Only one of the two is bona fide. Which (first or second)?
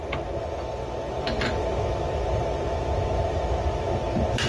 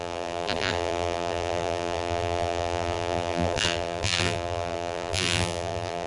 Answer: first